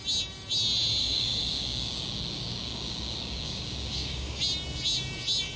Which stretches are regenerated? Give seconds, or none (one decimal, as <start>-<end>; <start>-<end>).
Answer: 1.0-4.4